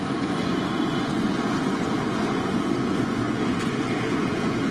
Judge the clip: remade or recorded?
remade